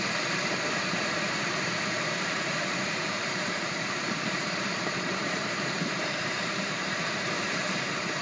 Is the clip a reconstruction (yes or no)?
yes